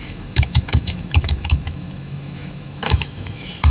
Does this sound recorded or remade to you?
remade